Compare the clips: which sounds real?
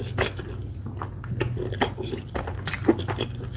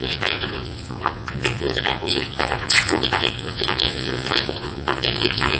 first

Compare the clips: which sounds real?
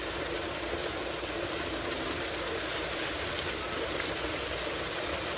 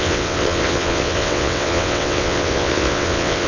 first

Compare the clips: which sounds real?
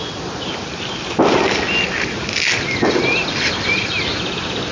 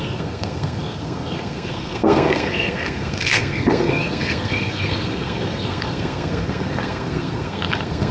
first